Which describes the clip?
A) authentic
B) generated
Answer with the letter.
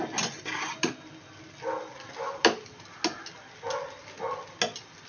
A